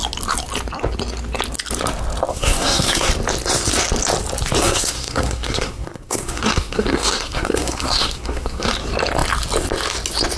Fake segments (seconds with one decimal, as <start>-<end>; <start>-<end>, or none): 2.3-3.1; 4.6-8.7